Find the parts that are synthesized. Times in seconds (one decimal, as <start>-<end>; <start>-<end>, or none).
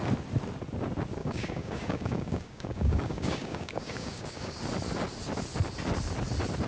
1.2-4.6